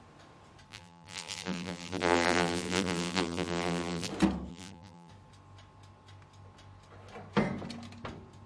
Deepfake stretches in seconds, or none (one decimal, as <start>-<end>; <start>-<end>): 0.7-4.1; 4.5-5.1